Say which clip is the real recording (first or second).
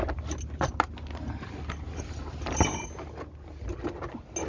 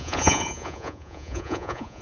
first